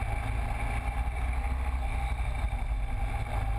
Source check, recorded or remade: recorded